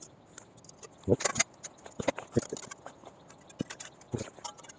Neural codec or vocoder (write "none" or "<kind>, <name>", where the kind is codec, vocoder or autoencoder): none